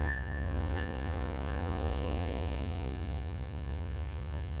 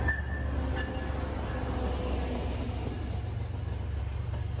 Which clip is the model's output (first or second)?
first